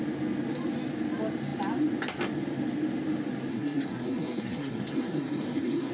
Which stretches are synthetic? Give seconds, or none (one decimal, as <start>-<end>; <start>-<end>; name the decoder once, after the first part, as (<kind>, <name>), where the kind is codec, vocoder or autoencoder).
3.5-5.9 (codec, SNAC)